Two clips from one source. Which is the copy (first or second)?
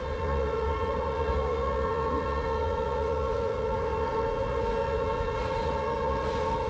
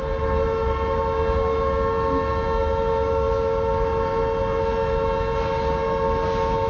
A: first